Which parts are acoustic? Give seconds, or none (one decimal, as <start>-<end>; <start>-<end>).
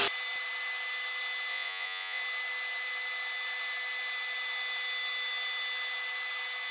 0.0-1.5; 2.2-6.7